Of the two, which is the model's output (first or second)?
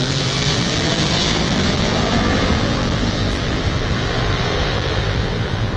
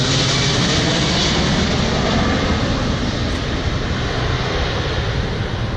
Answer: first